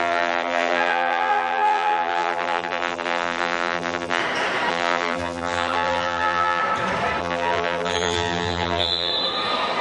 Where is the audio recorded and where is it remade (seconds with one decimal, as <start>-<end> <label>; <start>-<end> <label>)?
0.0-4.2 remade; 4.2-4.7 recorded; 4.7-6.6 remade; 6.6-7.2 recorded; 7.2-9.1 remade; 9.1-9.8 recorded